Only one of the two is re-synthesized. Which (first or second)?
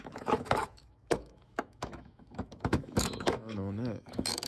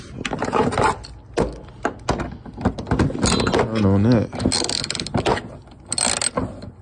first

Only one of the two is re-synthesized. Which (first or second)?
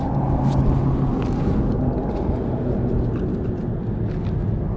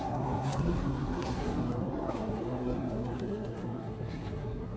second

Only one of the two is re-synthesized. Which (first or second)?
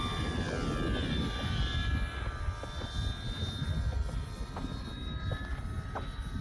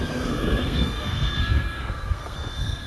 second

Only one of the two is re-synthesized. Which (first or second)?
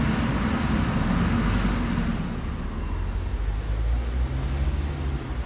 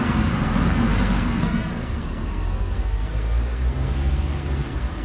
second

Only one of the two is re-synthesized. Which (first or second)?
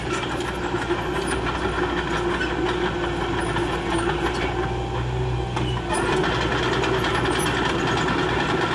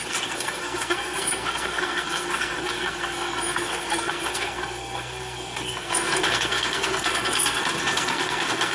second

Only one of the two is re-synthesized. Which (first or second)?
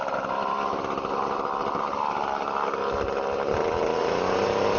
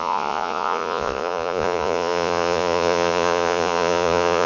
second